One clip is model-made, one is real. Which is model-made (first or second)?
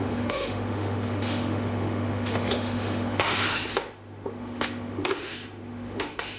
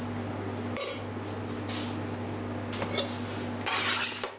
first